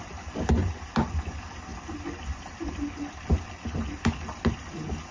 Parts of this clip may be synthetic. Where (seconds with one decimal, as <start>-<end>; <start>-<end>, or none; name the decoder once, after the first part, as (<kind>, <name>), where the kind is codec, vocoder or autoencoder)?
none